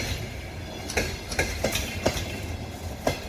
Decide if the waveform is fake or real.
real